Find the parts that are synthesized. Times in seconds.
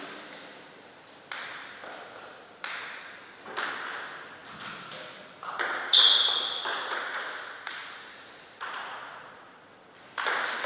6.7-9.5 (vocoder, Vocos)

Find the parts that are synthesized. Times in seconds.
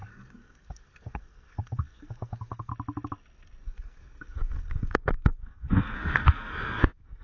0.0-2.7 (codec, SNAC); 3.6-7.2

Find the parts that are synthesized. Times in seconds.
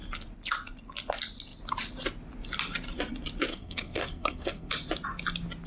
3.5-4.7 (codec, SNAC)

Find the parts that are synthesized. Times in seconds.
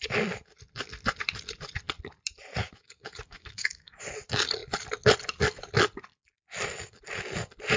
2.6-4.0 (autoencoder, DAC-VAE)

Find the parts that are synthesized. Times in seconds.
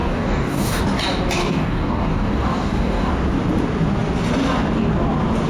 0.0-0.8 (codec, DAC); 1.4-3.1